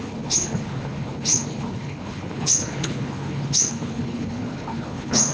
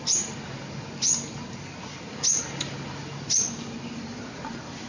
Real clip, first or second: second